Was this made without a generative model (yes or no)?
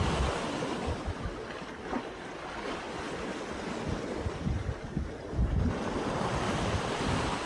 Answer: yes